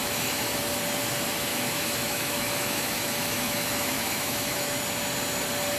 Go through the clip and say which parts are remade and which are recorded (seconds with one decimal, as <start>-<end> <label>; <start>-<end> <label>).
0.0-0.6 remade; 0.6-1.5 recorded; 1.5-4.8 remade; 4.8-5.8 recorded